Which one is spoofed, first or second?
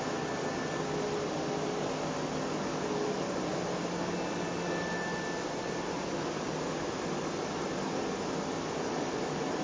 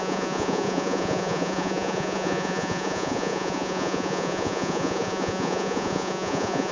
second